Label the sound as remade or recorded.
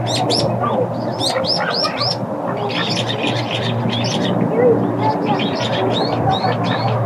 recorded